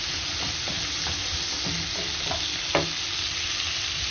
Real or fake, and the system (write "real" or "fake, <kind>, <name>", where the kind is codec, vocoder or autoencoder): real